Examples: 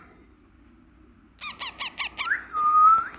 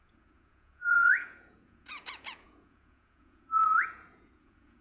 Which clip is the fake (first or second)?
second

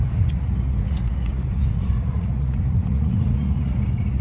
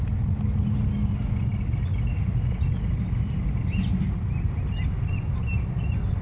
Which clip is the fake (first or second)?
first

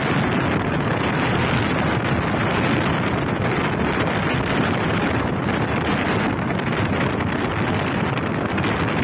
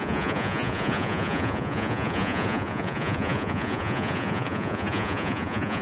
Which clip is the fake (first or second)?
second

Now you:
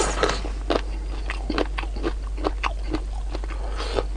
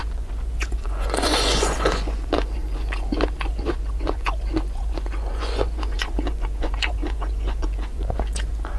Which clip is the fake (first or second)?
second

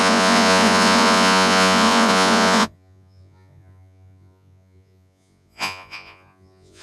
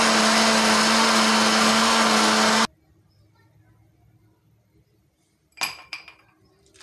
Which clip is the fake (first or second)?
first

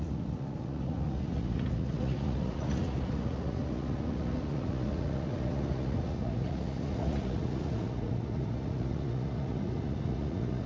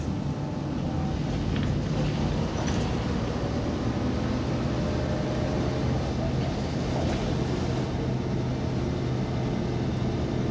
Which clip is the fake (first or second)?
first